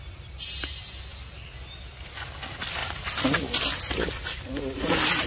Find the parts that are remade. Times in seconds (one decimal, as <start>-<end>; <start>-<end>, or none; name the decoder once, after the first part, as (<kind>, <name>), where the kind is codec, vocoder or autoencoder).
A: none